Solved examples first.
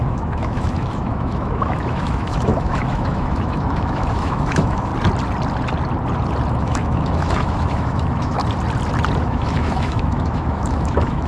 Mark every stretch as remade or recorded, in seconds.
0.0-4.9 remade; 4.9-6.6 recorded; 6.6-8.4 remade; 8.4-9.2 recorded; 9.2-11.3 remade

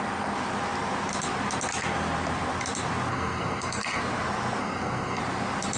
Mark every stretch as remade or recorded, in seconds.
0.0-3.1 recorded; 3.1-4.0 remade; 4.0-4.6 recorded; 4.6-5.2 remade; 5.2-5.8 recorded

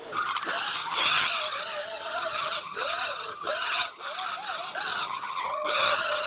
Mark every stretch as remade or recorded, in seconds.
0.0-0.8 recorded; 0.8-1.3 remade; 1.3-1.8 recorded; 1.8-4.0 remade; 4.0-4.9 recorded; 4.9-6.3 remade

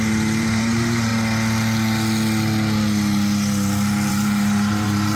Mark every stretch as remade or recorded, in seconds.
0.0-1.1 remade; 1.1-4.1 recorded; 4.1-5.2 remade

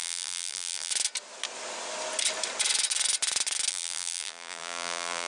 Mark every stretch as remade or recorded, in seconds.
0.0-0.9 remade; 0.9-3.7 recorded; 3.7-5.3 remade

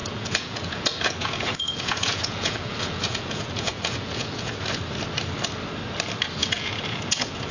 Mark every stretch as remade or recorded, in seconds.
0.0-4.5 remade; 4.5-6.4 recorded; 6.4-7.5 remade

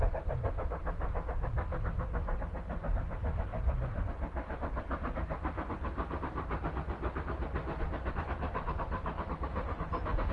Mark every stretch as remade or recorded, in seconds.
0.0-10.3 recorded